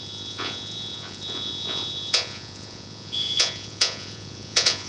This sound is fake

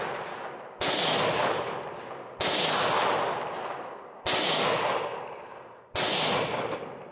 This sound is real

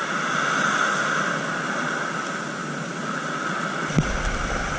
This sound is real